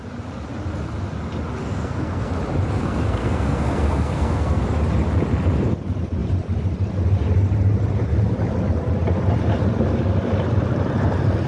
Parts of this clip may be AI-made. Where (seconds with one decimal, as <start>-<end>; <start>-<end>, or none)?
1.6-2.3; 2.8-4.6